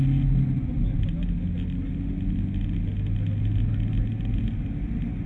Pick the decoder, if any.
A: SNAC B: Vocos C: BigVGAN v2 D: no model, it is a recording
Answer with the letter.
D